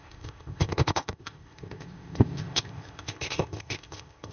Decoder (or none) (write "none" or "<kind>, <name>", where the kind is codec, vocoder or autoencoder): codec, ZipCodec